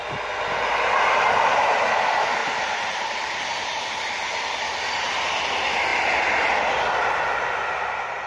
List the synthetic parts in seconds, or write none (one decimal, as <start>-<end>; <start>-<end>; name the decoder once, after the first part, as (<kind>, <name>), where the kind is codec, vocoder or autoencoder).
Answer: 2.4-3.4 (vocoder, BigVGAN v2)